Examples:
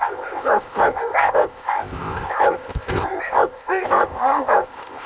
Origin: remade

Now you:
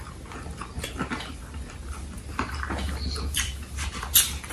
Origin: recorded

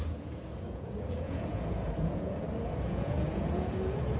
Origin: remade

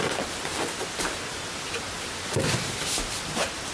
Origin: recorded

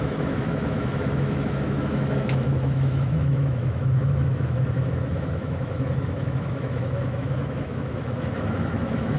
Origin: remade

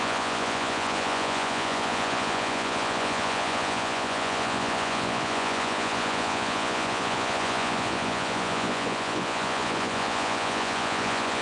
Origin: remade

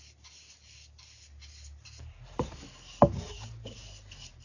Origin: recorded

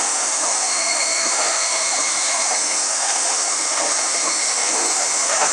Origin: remade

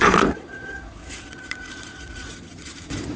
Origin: remade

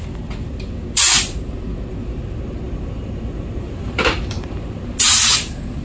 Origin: recorded